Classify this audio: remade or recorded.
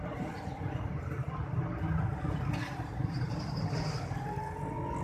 recorded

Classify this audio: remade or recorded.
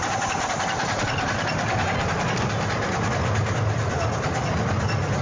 recorded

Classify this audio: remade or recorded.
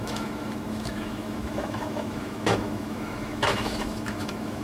remade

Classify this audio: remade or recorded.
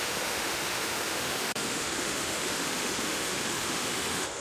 remade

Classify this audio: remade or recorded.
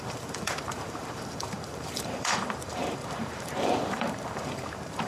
remade